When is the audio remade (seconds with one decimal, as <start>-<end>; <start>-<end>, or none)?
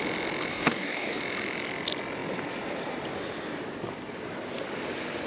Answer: 0.5-1.2